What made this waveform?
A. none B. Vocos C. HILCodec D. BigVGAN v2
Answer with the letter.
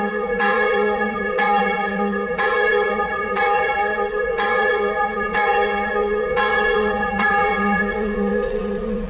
B